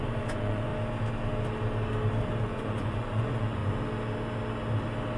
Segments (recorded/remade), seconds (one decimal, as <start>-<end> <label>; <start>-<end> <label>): 0.0-0.7 remade; 0.7-2.4 recorded; 2.4-3.6 remade; 3.6-5.2 recorded